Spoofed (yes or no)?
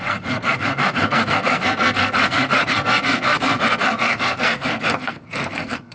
yes